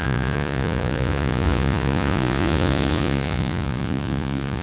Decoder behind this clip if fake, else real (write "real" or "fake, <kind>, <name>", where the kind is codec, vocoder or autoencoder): fake, vocoder, Vocos